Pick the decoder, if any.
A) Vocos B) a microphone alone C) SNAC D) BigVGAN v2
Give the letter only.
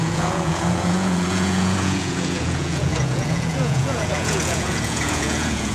A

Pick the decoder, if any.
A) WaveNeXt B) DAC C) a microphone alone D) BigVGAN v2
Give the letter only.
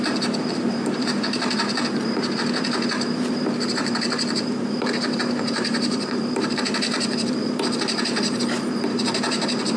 D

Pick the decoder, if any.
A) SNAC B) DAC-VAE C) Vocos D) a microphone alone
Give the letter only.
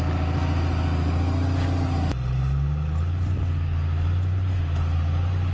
D